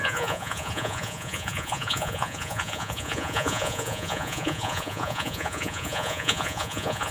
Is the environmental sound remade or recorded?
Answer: remade